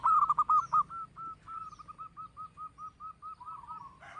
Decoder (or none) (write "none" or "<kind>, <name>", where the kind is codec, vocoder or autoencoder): none